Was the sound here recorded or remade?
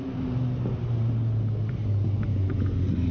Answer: recorded